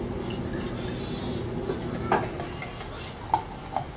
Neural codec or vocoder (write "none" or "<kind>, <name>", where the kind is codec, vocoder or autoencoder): none